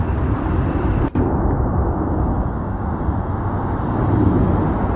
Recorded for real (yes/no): yes